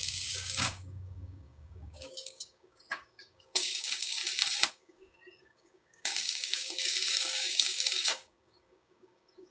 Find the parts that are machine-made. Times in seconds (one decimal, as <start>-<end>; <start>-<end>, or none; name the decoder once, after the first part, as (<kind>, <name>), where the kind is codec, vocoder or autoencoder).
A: 0.0-4.2 (codec, DAC); 4.7-9.5